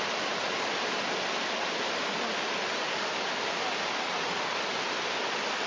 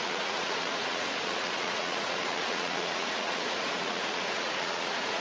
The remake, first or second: second